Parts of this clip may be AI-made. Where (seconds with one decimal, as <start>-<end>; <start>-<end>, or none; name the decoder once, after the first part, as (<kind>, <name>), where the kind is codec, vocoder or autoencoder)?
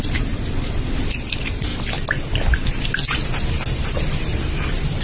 0.0-1.7 (vocoder, BigVGAN v2); 3.7-5.0